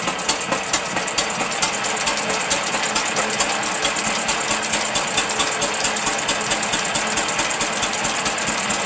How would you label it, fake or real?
real